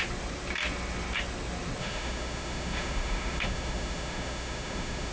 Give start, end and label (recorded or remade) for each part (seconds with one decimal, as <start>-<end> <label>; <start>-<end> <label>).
0.0-1.8 recorded; 1.8-5.1 remade